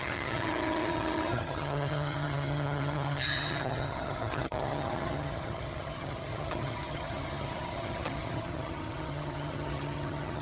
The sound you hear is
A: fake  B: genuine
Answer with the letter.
A